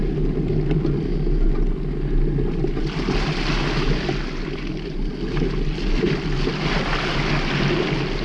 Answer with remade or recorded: recorded